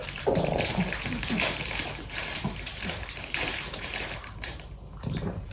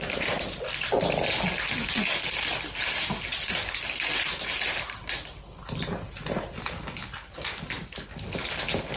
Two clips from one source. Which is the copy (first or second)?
first